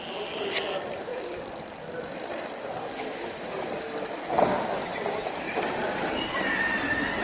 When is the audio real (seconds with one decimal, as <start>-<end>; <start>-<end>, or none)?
0.0-7.2